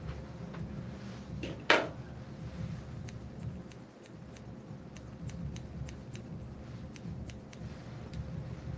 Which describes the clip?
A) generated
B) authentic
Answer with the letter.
B